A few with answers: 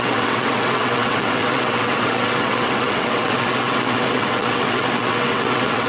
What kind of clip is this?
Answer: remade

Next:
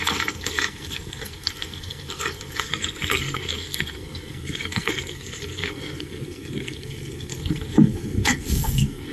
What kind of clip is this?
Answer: remade